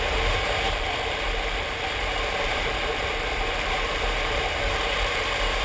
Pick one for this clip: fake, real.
fake